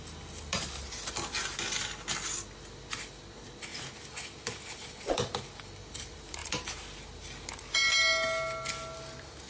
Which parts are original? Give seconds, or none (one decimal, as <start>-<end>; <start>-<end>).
0.0-9.5